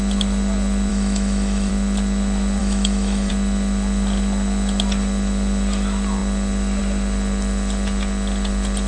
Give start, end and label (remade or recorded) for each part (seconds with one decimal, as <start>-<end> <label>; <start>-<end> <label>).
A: 0.0-0.9 recorded; 0.9-1.7 remade; 1.7-2.6 recorded; 2.6-3.3 remade; 3.3-8.9 recorded